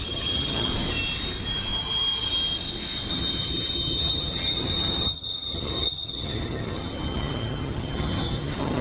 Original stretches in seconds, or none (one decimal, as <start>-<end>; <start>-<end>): 0.7-3.1